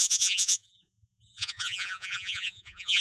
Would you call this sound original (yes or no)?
no